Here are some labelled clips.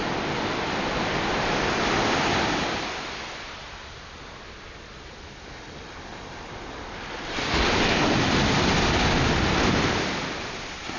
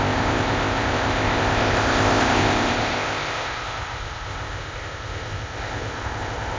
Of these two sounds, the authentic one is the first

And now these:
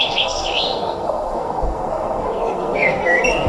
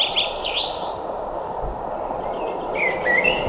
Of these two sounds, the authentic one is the second